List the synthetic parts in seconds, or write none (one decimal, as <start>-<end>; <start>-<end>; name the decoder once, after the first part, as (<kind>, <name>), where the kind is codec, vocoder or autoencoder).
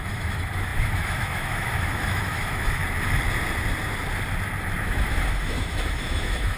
0.0-2.8 (autoencoder, DAC-VAE); 4.8-6.6